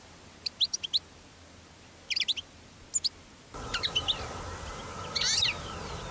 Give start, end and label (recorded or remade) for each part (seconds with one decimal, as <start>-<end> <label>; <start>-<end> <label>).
0.0-6.1 recorded